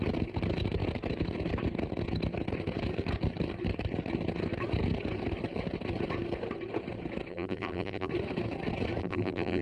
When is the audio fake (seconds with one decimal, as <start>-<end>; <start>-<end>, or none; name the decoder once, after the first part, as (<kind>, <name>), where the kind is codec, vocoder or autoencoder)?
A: 7.3-8.1 (vocoder, BigVGAN v2); 9.0-9.6